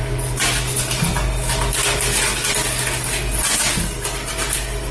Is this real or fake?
real